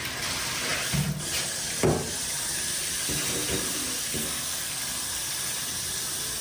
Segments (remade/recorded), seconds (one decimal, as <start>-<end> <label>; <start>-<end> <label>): 0.0-4.2 recorded; 4.2-4.8 remade; 4.8-6.4 recorded